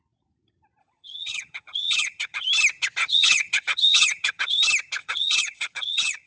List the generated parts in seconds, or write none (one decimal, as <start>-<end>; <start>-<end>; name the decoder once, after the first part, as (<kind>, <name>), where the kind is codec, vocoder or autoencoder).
0.8-2.5 (vocoder, HiFi-GAN); 3.0-4.6; 5.0-6.3